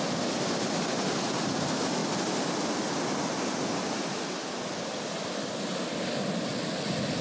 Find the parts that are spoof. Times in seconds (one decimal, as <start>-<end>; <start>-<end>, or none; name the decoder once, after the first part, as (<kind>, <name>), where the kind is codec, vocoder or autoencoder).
none